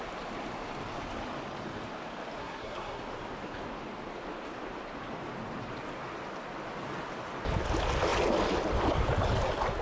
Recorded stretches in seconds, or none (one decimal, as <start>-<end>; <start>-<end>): 0.0-2.4; 3.0-9.8